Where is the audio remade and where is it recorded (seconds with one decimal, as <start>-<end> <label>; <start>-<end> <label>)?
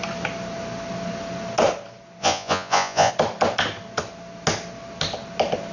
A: 0.0-2.2 recorded; 2.2-3.1 remade; 3.1-5.7 recorded